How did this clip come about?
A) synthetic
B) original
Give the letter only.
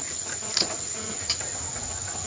A